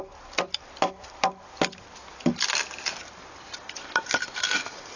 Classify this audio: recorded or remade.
recorded